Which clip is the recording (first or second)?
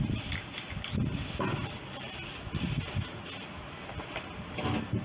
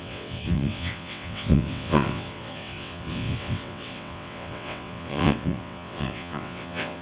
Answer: first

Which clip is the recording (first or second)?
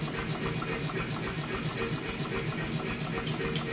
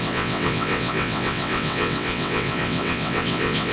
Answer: first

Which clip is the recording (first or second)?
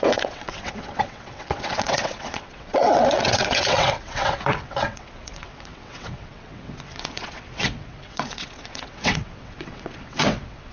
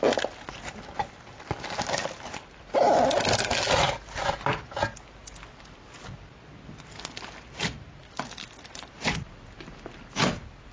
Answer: second